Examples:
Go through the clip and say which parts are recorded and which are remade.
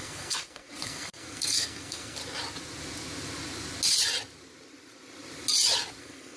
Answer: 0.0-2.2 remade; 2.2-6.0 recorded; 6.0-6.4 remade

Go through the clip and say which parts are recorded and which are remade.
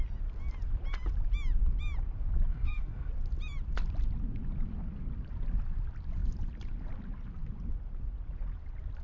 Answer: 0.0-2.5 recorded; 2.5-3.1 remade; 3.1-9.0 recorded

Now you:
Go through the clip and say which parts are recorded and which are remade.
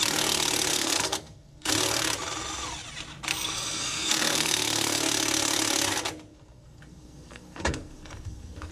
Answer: 0.0-0.7 recorded; 0.7-1.7 remade; 1.7-3.3 recorded; 3.3-5.0 remade; 5.0-6.3 recorded; 6.3-8.7 remade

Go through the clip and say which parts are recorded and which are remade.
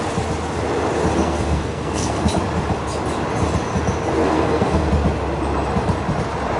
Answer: 0.0-1.2 recorded; 1.2-2.3 remade; 2.3-4.2 recorded; 4.2-4.9 remade; 4.9-6.6 recorded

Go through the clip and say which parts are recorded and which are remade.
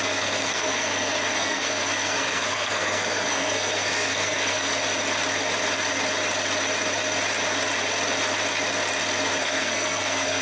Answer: 0.0-4.7 remade; 4.7-9.4 recorded; 9.4-10.4 remade